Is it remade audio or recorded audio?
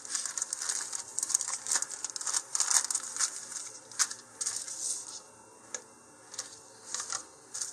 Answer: recorded